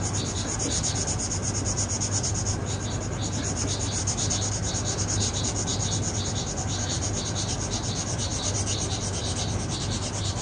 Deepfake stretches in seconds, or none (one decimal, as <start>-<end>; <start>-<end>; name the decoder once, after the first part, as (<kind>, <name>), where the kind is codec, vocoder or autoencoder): none